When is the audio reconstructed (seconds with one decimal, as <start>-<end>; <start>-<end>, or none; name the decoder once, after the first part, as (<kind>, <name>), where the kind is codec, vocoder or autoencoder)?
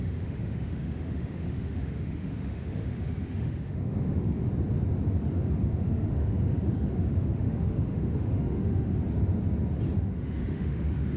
0.0-4.5 (autoencoder, DAC-VAE); 5.2-9.0; 10.0-11.2